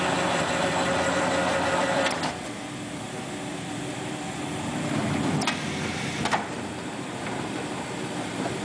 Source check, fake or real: real